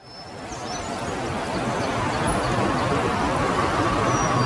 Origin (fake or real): real